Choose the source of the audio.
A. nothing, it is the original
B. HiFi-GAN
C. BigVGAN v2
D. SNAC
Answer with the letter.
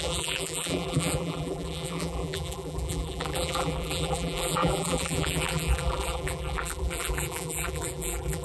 C